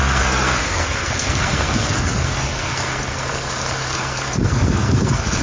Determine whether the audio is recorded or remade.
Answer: remade